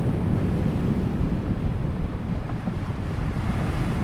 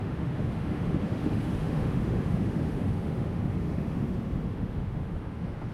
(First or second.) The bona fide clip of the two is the first